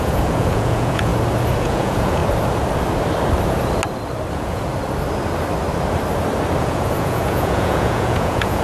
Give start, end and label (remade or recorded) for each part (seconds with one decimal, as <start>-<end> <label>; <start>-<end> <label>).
0.0-1.1 remade; 1.1-1.6 recorded; 1.6-2.2 remade; 2.2-4.3 recorded; 4.3-4.7 remade; 4.7-6.6 recorded; 6.6-8.6 remade